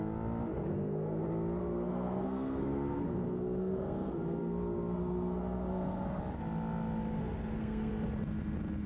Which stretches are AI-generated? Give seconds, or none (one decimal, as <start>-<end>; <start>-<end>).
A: 0.7-1.2; 1.6-6.2; 7.2-7.9